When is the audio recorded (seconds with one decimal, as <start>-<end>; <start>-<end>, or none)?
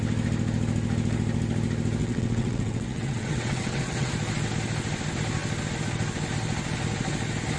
0.0-2.0; 4.1-7.6